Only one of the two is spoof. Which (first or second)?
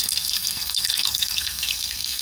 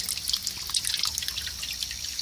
first